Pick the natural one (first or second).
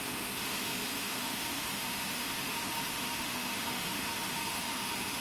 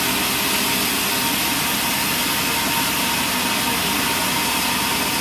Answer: second